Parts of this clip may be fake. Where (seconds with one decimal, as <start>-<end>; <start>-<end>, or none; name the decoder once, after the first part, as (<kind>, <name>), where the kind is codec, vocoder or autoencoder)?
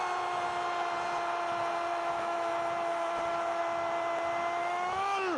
1.9-2.5 (autoencoder, DAC-VAE); 2.9-3.6; 4.6-5.4